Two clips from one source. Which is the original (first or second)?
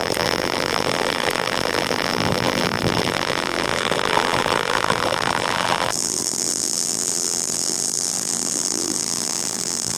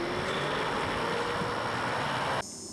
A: second